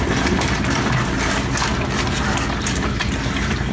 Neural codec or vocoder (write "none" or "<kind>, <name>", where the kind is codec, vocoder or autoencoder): none